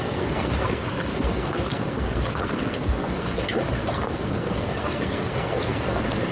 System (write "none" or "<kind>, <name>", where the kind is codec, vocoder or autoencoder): codec, SNAC